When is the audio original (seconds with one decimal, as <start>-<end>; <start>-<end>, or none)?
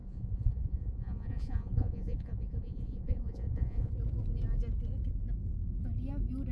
3.9-6.5